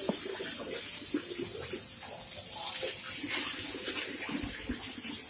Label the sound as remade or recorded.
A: recorded